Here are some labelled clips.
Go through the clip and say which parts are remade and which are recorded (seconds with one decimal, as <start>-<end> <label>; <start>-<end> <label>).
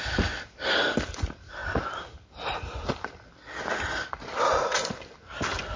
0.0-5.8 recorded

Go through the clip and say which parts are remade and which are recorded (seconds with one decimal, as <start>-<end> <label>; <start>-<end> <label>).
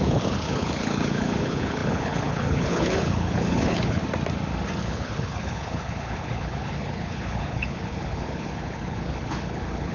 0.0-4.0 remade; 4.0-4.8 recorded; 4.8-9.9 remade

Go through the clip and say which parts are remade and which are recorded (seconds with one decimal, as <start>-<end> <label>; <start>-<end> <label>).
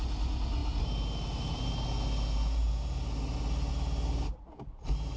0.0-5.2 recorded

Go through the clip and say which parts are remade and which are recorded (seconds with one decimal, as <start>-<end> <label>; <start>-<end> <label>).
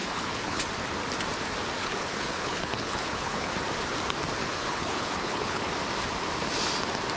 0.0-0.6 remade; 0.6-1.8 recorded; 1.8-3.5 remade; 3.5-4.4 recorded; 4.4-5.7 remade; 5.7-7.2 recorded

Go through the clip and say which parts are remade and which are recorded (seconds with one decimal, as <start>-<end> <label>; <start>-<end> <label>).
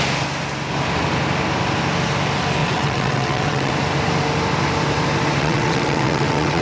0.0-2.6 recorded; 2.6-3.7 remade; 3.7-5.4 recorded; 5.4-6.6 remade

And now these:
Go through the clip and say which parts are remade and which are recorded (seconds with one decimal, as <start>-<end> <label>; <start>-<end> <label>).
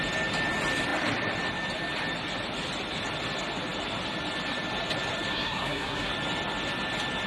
0.0-5.3 recorded; 5.3-6.1 remade; 6.1-7.3 recorded